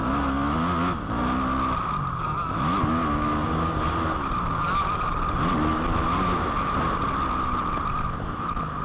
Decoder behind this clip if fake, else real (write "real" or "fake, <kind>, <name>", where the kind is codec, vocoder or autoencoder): real